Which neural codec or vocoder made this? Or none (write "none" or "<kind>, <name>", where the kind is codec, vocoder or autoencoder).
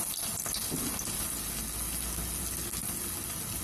none